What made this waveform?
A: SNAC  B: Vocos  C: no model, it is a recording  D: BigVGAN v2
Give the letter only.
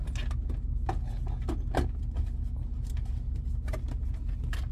C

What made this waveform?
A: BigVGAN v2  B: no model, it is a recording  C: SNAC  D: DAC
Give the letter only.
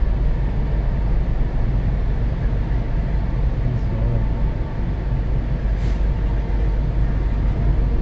B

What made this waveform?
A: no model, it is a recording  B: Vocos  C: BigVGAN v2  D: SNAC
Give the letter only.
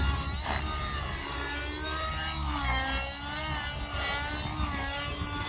A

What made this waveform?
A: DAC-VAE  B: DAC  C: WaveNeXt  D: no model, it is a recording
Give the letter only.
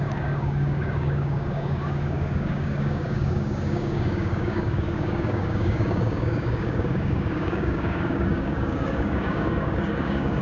B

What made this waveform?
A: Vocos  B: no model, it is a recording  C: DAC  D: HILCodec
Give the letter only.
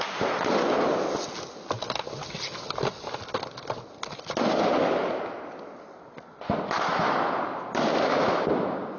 B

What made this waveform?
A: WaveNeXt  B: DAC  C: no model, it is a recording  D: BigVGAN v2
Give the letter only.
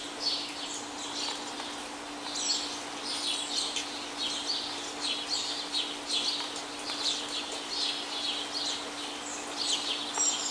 C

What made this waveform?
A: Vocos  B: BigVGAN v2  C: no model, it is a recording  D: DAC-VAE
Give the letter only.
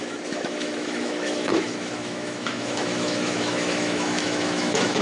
D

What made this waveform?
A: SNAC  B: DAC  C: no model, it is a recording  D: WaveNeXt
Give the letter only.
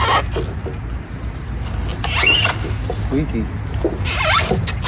C